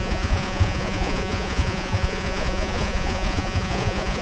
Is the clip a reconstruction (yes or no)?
yes